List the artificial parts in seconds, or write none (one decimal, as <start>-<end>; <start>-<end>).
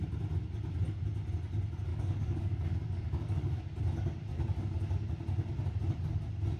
1.9-3.6; 4.3-4.9